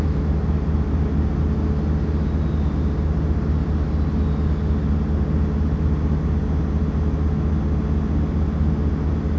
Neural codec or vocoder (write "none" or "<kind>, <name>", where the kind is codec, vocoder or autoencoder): none